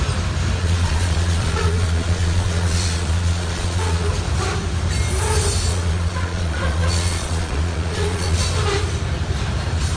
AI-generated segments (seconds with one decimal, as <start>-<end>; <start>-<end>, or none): 0.6-4.1; 5.7-8.4